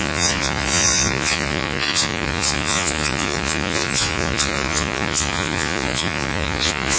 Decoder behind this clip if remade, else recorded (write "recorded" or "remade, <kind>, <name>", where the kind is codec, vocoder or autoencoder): remade, vocoder, Vocos